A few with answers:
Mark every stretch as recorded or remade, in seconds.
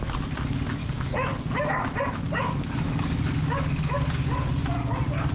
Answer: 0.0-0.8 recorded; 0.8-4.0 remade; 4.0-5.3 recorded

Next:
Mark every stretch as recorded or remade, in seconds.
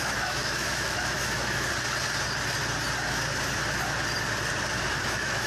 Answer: 0.0-1.7 remade; 1.7-5.0 recorded; 5.0-5.5 remade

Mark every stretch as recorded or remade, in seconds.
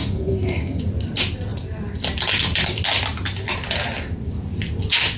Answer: 0.0-0.8 remade; 0.8-5.2 recorded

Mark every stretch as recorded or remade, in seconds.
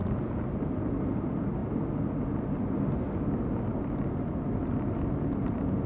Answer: 0.0-5.9 recorded